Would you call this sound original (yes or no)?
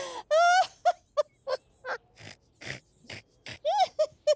yes